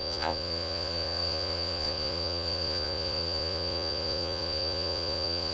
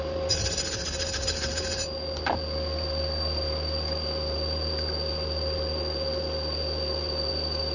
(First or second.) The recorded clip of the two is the second